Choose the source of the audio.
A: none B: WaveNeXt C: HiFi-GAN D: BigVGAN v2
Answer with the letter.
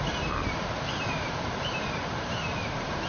D